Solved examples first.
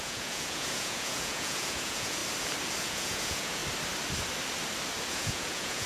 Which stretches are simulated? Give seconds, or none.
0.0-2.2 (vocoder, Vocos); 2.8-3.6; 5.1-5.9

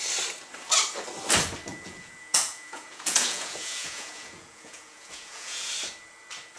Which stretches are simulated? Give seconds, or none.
1.7-5.7 (vocoder, Vocos)

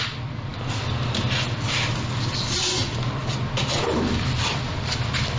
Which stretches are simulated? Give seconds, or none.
0.0-3.2 (vocoder, BigVGAN v2); 3.8-5.4

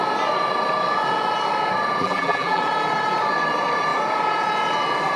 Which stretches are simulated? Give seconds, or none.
2.0-2.6 (vocoder, BigVGAN v2)

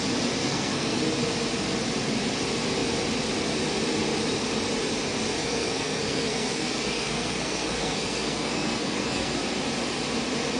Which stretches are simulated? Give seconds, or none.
0.4-1.0 (codec, SNAC); 5.4-9.4

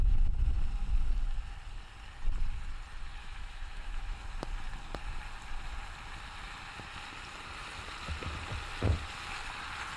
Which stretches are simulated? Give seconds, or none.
3.2-4.2 (autoencoder, DAC-VAE)

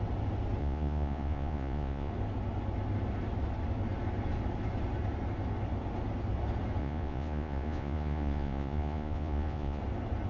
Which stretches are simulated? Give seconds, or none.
0.6-2.1 (vocoder, Vocos); 6.8-9.8

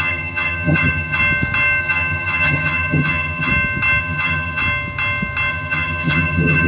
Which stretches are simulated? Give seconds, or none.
0.0-1.2 (vocoder, HiFi-GAN); 1.8-3.5; 4.0-4.6; 5.5-6.7